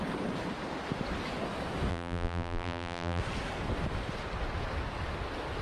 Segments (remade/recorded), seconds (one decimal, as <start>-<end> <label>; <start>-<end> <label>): 0.0-1.9 recorded; 1.9-3.2 remade; 3.2-5.6 recorded